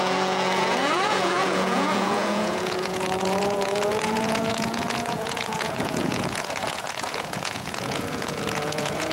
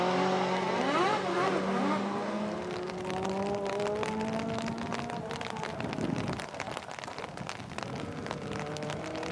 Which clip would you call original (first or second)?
second